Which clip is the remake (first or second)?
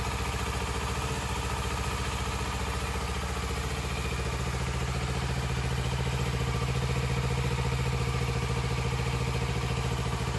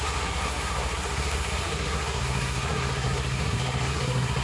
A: second